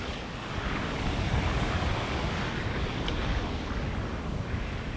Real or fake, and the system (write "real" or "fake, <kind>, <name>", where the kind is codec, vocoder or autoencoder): fake, codec, DAC